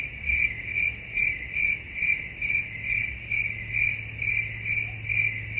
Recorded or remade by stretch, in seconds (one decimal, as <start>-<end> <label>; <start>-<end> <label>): 0.0-5.6 recorded